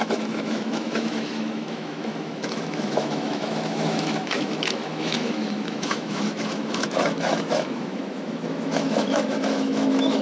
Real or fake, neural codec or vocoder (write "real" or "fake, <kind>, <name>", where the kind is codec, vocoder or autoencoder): fake, autoencoder, DAC-VAE